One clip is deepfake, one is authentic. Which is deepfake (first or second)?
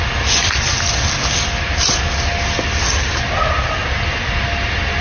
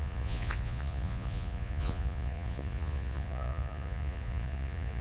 second